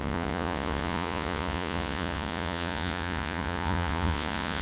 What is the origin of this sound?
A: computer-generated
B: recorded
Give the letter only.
A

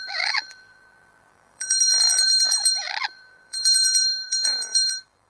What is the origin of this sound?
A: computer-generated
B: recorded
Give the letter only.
A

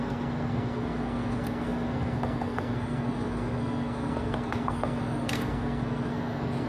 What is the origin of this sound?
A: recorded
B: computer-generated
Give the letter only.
B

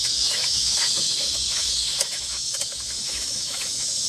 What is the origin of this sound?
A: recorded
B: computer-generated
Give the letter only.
B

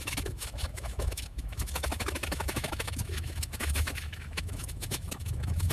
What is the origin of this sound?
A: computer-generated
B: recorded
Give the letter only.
A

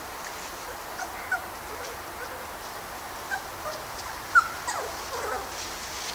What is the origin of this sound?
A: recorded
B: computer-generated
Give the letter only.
A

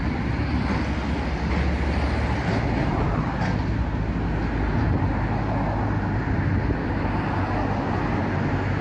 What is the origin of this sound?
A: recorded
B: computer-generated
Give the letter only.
A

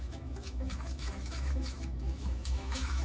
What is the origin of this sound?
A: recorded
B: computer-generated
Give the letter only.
B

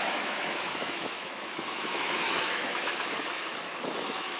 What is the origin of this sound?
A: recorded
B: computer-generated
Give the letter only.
B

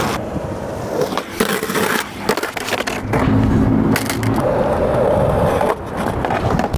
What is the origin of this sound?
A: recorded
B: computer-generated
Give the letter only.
A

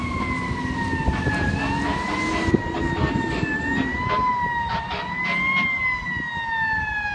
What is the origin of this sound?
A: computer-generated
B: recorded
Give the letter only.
B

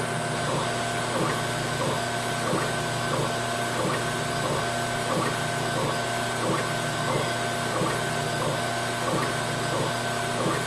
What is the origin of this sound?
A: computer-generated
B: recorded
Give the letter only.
B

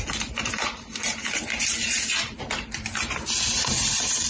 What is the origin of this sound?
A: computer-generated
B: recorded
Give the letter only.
A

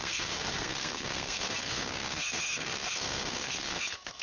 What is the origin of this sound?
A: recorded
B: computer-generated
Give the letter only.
B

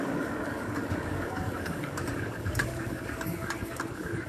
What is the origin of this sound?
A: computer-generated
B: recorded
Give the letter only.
A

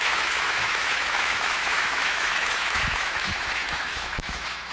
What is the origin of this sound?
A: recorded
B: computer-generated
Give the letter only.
B